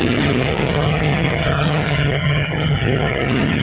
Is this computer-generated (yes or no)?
yes